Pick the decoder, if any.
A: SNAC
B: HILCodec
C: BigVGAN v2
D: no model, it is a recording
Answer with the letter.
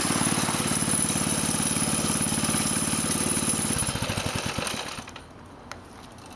D